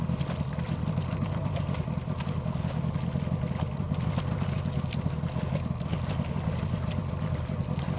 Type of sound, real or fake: real